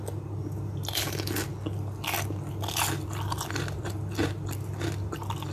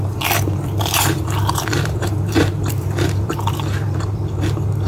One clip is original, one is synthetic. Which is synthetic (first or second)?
second